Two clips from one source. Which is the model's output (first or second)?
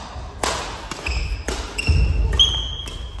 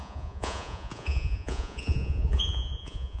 second